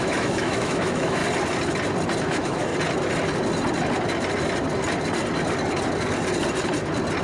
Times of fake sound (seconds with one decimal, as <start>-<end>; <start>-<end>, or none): 0.0-1.2; 2.2-2.7